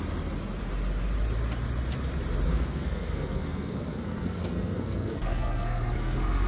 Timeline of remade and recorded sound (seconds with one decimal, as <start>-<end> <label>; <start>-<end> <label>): 0.0-2.5 recorded; 2.5-6.5 remade